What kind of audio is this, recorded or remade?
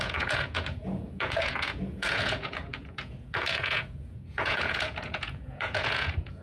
remade